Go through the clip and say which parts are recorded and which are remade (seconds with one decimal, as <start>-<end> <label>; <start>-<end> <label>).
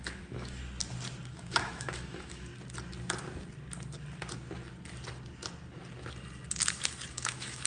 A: 0.0-0.6 remade; 0.6-1.3 recorded; 1.3-2.5 remade; 2.5-7.1 recorded; 7.1-7.7 remade